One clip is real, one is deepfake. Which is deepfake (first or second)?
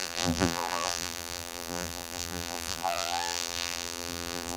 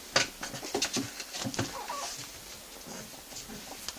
first